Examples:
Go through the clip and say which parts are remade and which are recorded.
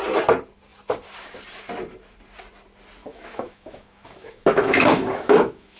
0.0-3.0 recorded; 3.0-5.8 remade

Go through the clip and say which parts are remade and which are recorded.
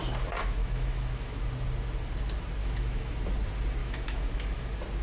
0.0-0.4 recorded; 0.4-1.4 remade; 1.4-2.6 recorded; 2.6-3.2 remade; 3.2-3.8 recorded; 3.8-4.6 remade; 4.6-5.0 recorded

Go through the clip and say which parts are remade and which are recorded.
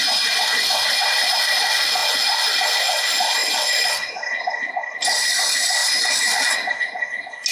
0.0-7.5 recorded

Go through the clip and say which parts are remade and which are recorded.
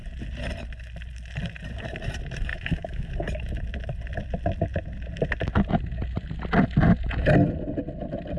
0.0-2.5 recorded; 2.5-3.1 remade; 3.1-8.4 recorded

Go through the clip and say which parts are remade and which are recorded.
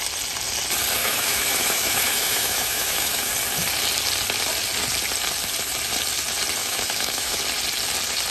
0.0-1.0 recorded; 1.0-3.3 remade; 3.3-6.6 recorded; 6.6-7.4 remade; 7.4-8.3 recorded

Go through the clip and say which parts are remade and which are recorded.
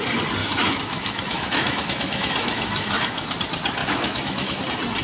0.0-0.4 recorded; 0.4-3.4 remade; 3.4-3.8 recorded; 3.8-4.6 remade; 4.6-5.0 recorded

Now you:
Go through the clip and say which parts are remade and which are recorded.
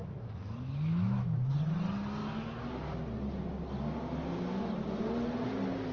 0.0-1.4 remade; 1.4-2.2 recorded; 2.2-2.7 remade; 2.7-5.9 recorded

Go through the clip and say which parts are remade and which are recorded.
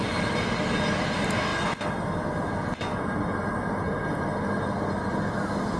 0.0-5.8 recorded